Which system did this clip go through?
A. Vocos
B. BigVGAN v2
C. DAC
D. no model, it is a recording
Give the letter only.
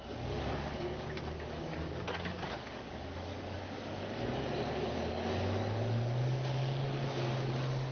C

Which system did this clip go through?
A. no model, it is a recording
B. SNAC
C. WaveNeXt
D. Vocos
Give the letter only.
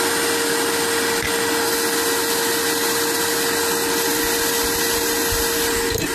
A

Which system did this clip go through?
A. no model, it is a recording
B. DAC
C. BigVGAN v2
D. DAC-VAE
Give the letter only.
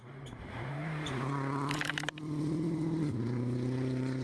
C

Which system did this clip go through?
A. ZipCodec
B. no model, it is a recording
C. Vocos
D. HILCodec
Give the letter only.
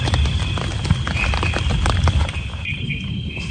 B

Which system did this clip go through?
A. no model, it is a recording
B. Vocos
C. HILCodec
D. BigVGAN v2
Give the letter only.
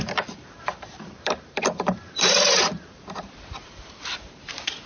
D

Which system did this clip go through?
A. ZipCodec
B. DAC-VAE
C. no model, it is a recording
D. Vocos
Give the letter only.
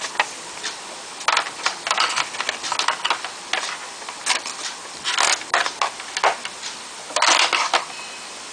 C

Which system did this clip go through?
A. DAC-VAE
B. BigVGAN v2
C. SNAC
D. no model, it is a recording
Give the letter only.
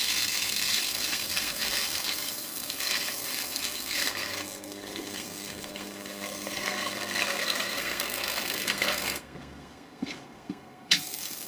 C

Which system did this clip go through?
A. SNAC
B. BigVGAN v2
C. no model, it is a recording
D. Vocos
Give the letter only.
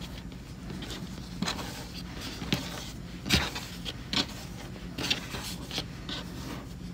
C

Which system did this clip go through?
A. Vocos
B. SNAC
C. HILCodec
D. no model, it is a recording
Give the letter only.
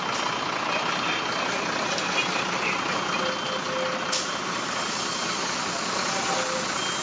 D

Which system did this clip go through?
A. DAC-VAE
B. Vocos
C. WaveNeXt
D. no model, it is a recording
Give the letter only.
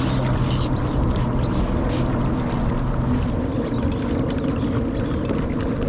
D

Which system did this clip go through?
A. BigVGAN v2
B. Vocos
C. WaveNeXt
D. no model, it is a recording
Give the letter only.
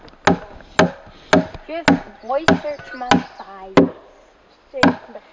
D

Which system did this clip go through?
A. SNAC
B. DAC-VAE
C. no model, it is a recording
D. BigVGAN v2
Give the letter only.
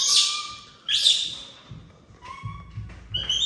C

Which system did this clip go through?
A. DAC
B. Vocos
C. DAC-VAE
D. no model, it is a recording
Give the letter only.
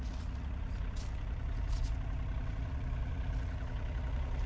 B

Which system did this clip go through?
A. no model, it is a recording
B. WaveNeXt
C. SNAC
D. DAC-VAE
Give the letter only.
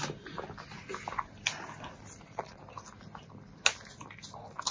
A